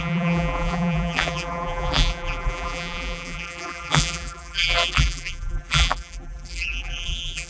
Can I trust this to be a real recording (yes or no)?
no